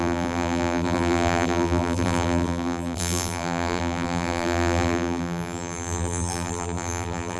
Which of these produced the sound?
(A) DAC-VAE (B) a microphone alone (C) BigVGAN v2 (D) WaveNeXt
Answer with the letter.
C